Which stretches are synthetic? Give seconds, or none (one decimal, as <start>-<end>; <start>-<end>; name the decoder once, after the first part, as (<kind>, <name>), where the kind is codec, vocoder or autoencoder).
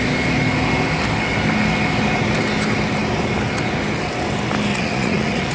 4.7-5.5 (vocoder, Vocos)